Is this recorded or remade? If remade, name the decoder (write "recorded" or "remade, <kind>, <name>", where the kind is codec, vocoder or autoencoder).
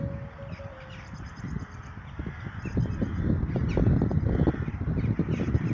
recorded